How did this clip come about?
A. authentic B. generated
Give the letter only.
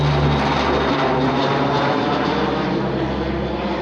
A